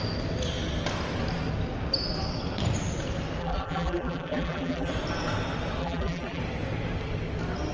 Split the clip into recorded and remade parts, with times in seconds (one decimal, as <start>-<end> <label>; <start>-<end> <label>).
0.0-3.4 recorded; 3.4-4.9 remade; 4.9-5.8 recorded; 5.8-6.4 remade; 6.4-7.7 recorded